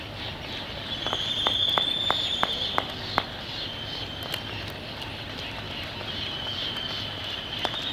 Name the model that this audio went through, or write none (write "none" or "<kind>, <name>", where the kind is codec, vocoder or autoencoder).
none